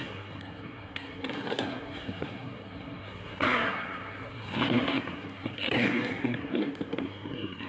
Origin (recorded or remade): remade